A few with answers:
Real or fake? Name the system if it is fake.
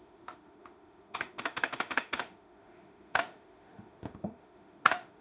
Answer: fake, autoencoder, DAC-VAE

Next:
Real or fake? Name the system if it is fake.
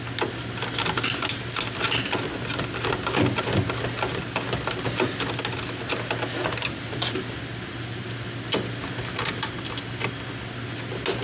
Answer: real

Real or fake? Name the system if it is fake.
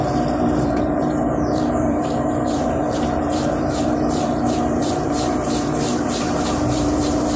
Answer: fake, vocoder, BigVGAN v2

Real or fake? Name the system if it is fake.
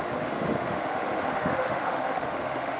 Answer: fake, autoencoder, DAC-VAE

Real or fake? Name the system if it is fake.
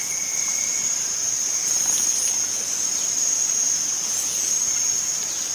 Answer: fake, vocoder, BigVGAN v2